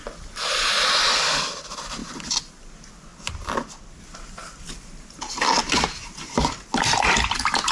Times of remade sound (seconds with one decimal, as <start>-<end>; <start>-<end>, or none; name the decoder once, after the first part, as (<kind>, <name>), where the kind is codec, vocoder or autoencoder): none